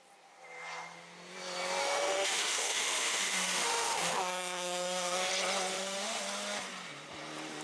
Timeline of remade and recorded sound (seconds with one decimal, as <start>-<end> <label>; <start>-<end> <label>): 0.0-1.8 recorded; 1.8-5.3 remade; 5.3-5.7 recorded; 5.7-6.2 remade; 6.2-7.6 recorded